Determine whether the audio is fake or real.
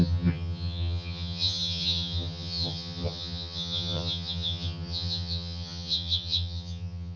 fake